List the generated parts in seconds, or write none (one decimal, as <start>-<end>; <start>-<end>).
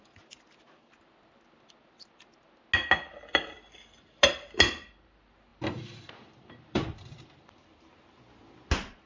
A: 5.5-7.9